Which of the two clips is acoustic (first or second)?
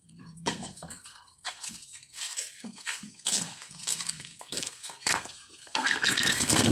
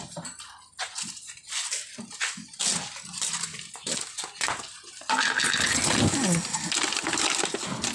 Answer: second